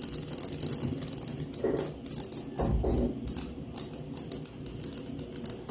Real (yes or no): yes